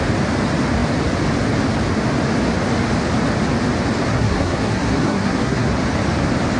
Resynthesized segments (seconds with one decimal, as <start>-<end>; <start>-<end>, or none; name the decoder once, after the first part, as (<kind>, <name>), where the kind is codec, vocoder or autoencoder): 4.1-5.7 (codec, SNAC)